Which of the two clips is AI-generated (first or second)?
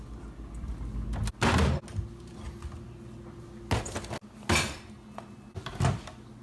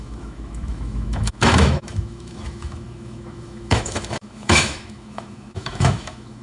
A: second